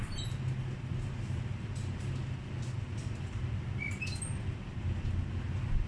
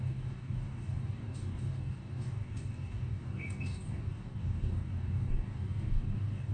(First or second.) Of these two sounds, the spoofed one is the second